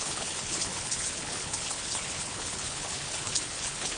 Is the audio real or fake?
fake